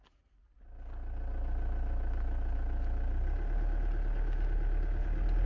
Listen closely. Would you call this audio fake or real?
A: real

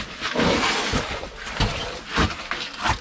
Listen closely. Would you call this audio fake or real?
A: real